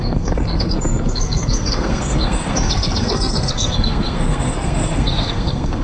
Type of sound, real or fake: fake